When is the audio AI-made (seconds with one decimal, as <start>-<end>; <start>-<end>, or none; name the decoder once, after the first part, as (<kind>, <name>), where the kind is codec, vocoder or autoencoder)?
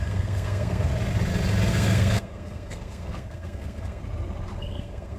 0.0-0.9 (codec, SNAC); 1.7-4.0; 4.6-5.2